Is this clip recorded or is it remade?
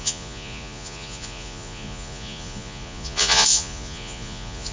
remade